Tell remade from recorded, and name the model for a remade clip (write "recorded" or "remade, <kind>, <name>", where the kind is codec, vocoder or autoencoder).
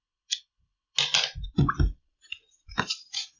recorded